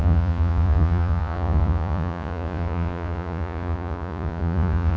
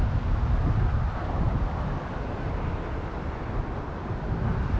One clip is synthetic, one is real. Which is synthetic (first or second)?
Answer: first